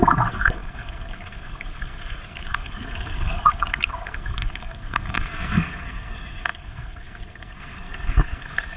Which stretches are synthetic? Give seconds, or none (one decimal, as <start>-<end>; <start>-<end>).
0.0-8.8